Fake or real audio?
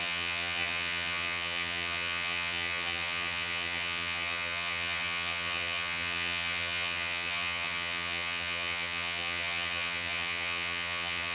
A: fake